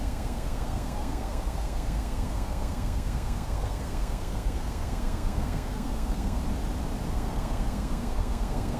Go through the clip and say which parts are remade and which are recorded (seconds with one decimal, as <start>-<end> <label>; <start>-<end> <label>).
0.0-6.4 remade; 6.4-7.1 recorded; 7.1-8.8 remade